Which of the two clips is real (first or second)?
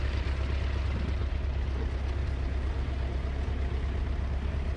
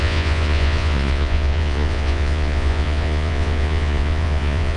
first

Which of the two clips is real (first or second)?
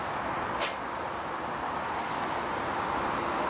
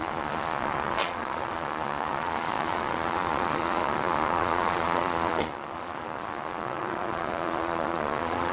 first